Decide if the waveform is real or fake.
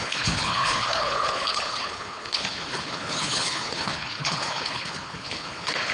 fake